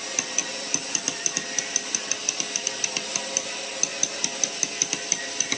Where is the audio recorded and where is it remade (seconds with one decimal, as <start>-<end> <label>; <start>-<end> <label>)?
0.0-5.6 recorded